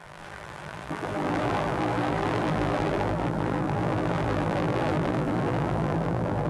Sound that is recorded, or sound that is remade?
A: remade